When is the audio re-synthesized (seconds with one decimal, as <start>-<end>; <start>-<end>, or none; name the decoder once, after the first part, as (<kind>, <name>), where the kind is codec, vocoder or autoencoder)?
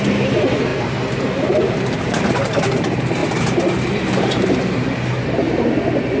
3.2-4.0 (vocoder, BigVGAN v2)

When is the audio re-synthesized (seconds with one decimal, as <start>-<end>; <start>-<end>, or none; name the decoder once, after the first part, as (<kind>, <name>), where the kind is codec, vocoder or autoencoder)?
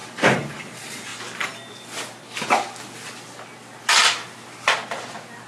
1.1-1.7 (vocoder, BigVGAN v2)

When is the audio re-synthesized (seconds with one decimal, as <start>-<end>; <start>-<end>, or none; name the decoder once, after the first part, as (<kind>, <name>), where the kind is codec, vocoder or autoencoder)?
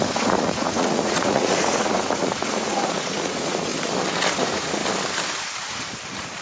0.0-3.7 (vocoder, Vocos); 4.3-4.8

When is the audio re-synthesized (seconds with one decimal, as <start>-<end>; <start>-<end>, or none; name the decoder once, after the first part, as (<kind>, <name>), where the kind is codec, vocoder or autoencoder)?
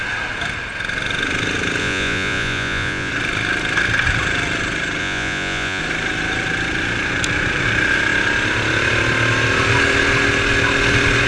1.8-3.1 (vocoder, Vocos); 5.0-5.8